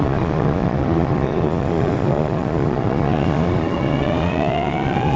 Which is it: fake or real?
fake